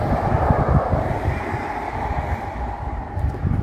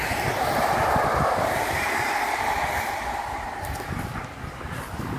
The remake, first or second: second